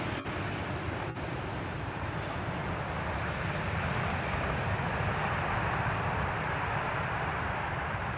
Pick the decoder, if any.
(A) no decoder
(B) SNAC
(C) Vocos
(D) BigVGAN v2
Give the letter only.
D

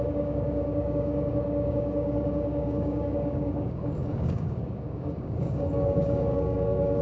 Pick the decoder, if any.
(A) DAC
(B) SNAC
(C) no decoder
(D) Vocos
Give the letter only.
A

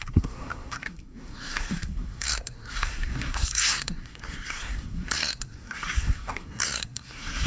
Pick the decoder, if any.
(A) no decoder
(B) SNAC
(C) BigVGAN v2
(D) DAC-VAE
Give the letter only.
B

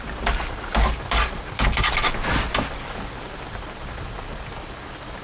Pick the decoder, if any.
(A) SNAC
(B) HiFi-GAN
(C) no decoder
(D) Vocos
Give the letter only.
C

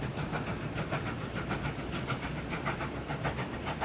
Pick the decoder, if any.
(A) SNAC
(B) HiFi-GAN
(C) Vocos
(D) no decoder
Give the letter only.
D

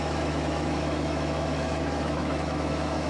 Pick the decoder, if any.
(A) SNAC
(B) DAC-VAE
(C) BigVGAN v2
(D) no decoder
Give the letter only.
B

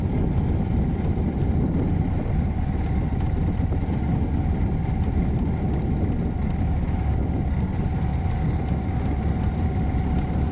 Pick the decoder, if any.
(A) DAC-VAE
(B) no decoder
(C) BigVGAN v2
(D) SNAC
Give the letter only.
B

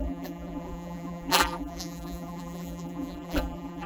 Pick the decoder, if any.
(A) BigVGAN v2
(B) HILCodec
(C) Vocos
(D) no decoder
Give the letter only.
A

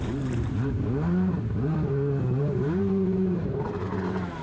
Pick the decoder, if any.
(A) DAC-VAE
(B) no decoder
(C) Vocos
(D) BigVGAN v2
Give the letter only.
D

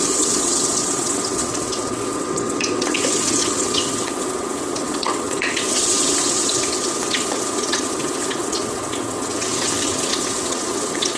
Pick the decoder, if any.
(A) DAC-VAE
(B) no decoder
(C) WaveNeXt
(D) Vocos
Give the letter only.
C